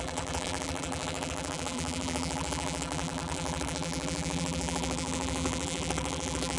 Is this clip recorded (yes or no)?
no